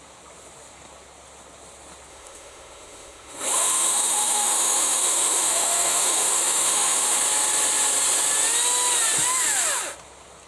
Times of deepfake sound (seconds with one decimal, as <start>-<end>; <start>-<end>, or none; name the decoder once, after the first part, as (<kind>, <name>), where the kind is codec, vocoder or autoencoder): 2.1-7.2 (autoencoder, DAC-VAE)